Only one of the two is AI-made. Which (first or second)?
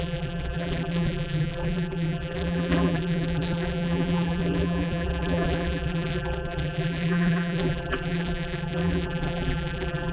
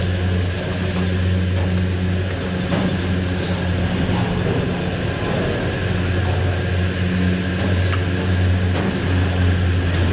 first